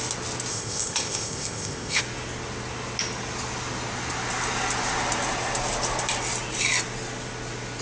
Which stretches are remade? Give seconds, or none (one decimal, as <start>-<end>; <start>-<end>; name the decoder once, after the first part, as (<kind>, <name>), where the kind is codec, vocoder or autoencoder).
0.5-2.0 (codec, ZipCodec)

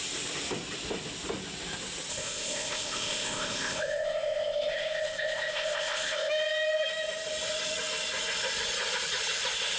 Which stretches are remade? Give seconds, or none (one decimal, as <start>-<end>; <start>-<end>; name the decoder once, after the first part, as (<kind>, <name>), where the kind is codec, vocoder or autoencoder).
2.1-6.3 (codec, ZipCodec)

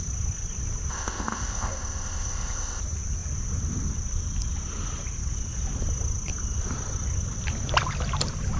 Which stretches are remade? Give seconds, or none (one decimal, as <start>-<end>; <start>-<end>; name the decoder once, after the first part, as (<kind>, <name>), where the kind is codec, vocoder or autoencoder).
0.9-2.8 (codec, ZipCodec)

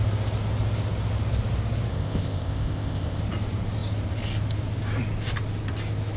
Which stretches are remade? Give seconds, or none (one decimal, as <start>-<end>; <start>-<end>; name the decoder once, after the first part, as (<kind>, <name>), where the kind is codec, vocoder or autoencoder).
1.9-3.2 (codec, ZipCodec)

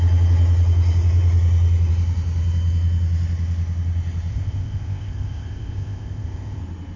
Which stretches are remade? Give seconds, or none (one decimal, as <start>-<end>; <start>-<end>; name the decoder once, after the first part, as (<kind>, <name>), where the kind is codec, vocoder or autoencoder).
4.3-6.6 (codec, ZipCodec)

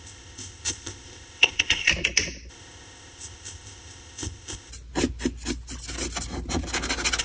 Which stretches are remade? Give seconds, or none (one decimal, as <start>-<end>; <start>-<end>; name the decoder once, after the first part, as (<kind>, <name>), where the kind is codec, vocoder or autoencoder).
0.0-1.9 (codec, ZipCodec); 2.5-4.7